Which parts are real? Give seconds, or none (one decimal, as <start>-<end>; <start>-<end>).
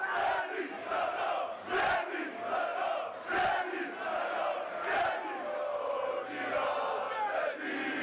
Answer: 0.0-8.0